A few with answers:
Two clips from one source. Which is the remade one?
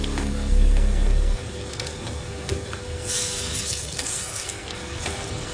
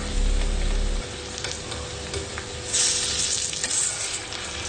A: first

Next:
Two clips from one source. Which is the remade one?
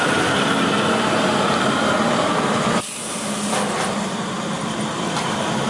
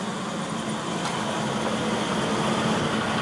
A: first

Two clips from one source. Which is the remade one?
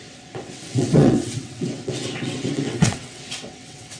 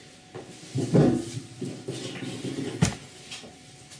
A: first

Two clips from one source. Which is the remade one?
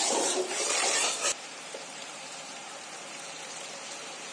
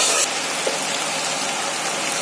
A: first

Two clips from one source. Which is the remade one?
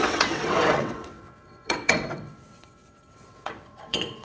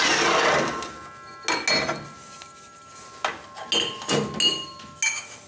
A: first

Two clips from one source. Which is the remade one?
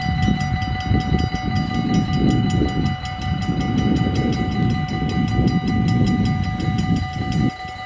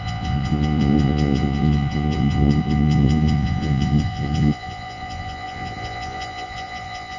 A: second